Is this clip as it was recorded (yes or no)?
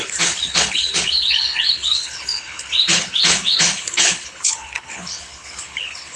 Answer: no